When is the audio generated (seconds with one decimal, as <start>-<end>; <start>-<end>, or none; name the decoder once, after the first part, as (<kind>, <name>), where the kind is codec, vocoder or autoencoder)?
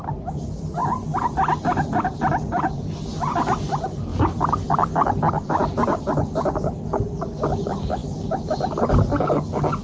none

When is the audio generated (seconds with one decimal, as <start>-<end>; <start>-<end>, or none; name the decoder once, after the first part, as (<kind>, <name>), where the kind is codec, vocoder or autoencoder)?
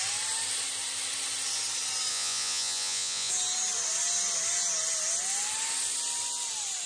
2.1-3.3 (vocoder, Vocos)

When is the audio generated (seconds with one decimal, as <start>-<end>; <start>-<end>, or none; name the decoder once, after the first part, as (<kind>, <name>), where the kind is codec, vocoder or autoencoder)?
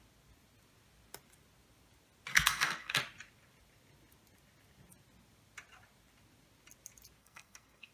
2.3-3.0 (codec, SNAC); 7.2-7.9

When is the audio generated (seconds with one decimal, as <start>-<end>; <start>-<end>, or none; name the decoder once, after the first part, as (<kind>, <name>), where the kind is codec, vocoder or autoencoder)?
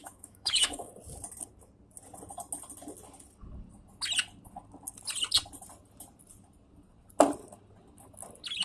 0.0-0.9 (autoencoder, DAC-VAE)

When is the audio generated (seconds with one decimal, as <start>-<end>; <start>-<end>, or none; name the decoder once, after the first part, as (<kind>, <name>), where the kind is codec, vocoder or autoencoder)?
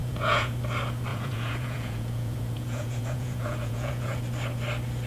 0.0-0.5 (vocoder, Vocos); 1.1-4.2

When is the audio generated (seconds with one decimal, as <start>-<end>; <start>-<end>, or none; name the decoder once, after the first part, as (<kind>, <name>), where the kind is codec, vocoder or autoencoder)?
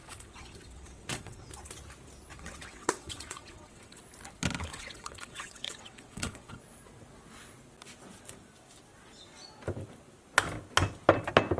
0.0-1.5 (vocoder, WaveNeXt); 2.3-4.0; 4.7-6.6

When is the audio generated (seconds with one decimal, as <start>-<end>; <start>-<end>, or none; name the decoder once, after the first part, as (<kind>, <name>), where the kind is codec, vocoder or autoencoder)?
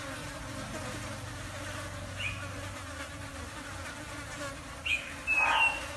none